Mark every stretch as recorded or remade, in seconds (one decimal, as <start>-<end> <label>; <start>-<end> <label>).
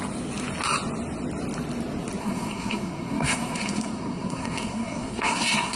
0.0-2.2 recorded; 2.2-5.8 remade